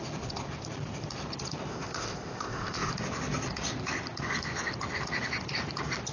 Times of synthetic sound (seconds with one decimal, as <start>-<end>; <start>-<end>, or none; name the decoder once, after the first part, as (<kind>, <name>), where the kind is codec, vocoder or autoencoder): 1.7-2.9 (codec, ZipCodec)